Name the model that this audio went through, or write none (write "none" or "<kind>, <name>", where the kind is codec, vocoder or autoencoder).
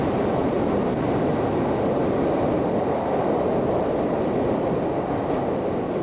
none